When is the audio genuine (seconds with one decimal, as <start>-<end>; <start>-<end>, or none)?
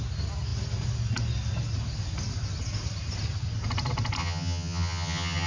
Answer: 0.0-4.2